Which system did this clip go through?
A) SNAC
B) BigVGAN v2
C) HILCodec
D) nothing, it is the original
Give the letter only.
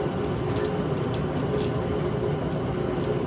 D